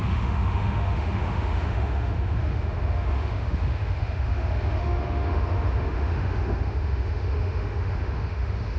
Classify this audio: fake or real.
fake